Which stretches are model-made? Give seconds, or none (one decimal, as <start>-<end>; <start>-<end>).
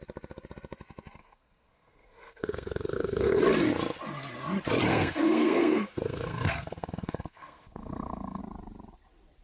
1.2-3.4; 4.9-8.4